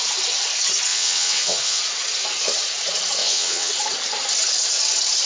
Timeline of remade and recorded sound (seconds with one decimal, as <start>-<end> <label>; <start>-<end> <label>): 0.0-0.9 recorded; 0.9-1.8 remade; 1.8-3.2 recorded; 3.2-3.7 remade; 3.7-5.3 recorded